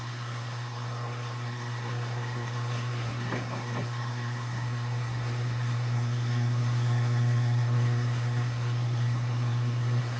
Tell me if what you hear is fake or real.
fake